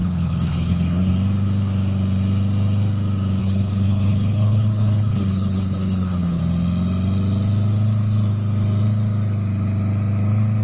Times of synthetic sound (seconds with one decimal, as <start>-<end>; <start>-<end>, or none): 0.0-1.1; 3.4-6.4